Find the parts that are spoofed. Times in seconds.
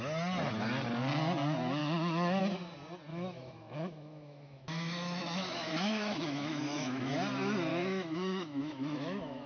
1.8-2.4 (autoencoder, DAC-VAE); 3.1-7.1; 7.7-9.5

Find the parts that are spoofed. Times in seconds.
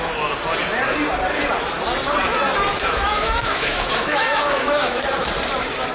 2.7-5.1 (autoencoder, DAC-VAE)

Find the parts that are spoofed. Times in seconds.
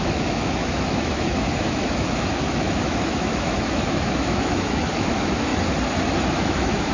0.0-5.5 (autoencoder, DAC-VAE); 6.3-6.9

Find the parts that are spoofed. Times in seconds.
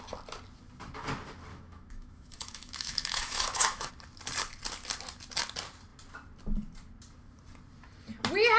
1.5-3.9 (autoencoder, DAC-VAE)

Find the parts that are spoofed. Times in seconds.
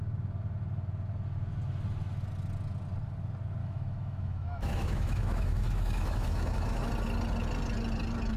3.6-6.9 (autoencoder, DAC-VAE)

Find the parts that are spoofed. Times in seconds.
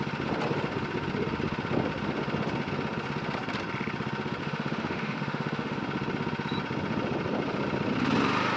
4.4-5.8 (autoencoder, DAC-VAE)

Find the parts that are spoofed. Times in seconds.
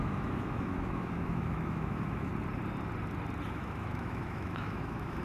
0.0-2.3 (autoencoder, DAC-VAE); 3.5-5.2